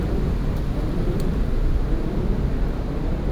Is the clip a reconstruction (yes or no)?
yes